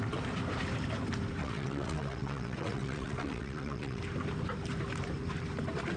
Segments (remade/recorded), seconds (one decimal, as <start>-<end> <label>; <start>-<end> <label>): 0.0-1.4 recorded; 1.4-4.0 remade; 4.0-6.0 recorded